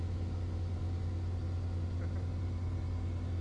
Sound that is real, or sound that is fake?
real